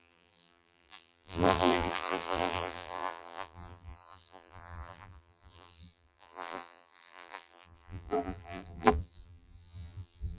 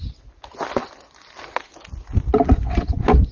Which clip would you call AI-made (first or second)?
first